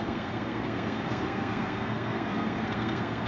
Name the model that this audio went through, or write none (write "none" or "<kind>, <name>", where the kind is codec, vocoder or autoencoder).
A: codec, SNAC